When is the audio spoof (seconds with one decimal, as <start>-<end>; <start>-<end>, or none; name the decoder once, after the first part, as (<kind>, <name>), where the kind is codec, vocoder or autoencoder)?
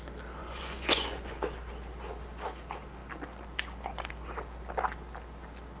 0.4-1.4 (vocoder, Vocos)